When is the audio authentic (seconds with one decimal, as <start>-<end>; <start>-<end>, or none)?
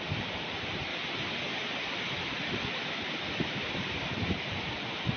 none